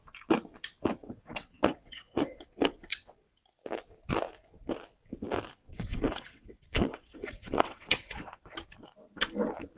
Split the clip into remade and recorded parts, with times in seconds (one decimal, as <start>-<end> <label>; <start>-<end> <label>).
0.0-1.0 recorded; 1.0-3.4 remade; 3.4-5.6 recorded; 5.6-8.5 remade; 8.5-9.8 recorded